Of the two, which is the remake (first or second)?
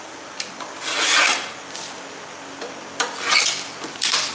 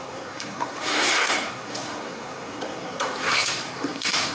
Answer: second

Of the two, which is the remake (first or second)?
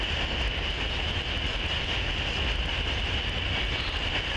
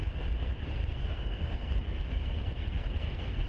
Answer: second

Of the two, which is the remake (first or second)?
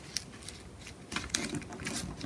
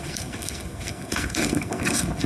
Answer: second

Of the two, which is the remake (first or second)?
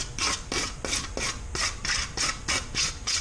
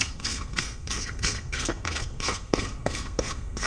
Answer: second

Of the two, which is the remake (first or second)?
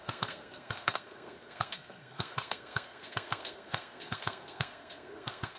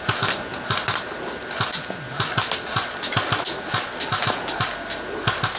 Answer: first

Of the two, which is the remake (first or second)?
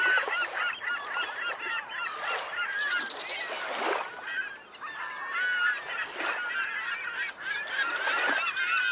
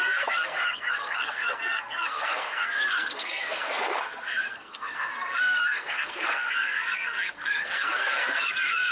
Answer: second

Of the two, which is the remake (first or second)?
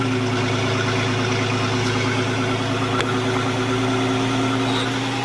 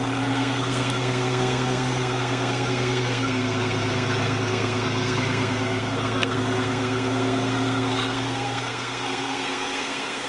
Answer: second